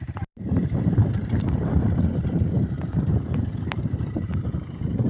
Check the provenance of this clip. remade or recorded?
remade